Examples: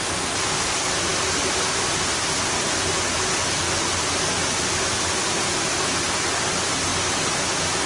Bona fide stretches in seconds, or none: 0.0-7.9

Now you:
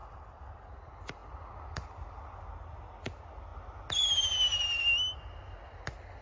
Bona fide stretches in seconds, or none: 0.7-6.2